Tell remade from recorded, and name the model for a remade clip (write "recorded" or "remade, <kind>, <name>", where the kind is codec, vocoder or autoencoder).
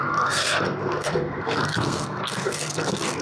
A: remade, codec, SNAC